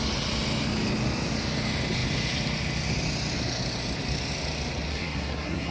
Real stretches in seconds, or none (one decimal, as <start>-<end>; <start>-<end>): 0.0-4.9